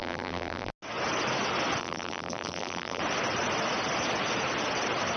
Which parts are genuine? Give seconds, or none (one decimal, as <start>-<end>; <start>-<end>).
0.7-1.8; 3.0-5.2